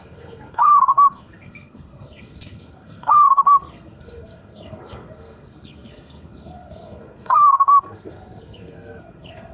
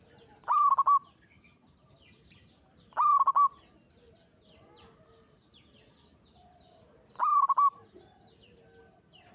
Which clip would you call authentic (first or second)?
second